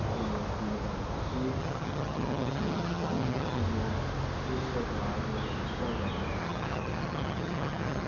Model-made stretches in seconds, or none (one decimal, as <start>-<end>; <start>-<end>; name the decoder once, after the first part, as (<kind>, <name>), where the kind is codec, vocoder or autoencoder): 1.6-3.6 (vocoder, HiFi-GAN); 6.4-8.1